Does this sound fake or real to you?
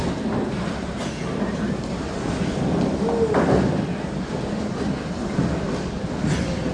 real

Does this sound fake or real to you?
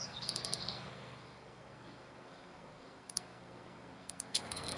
fake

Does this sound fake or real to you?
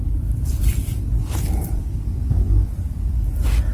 real